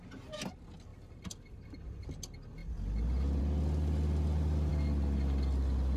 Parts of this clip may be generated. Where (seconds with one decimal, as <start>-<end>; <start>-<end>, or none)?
0.9-2.1